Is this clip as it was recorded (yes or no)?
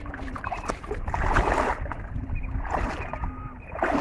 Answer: yes